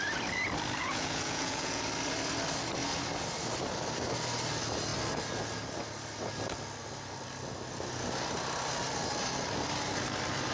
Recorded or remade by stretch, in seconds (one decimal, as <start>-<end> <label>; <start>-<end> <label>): 0.0-0.8 recorded; 0.8-1.8 remade; 1.8-10.5 recorded